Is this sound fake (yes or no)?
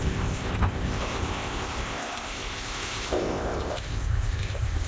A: yes